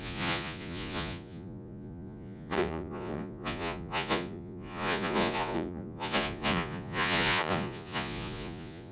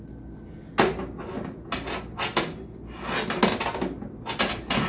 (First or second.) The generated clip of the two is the first